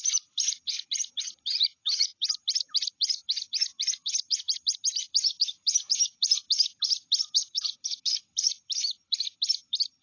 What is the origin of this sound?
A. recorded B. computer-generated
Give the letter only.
B